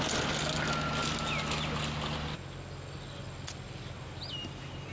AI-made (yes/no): no